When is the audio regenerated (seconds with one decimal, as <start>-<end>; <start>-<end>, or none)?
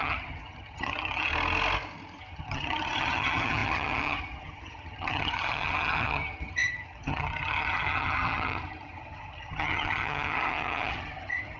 0.0-1.3; 2.2-11.6